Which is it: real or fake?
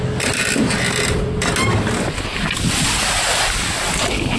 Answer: real